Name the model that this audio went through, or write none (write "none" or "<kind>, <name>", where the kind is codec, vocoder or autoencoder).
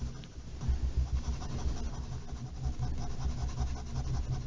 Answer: none